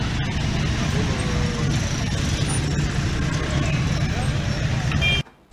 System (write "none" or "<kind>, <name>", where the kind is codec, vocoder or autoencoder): none